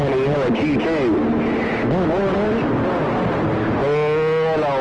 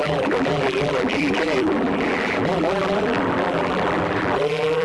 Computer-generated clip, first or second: second